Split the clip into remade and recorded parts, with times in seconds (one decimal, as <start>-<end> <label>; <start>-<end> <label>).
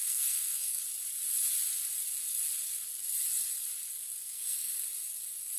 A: 0.0-0.8 remade; 0.8-4.2 recorded; 4.2-4.7 remade; 4.7-5.6 recorded